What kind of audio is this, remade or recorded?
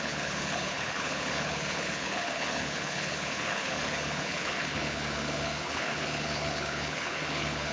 remade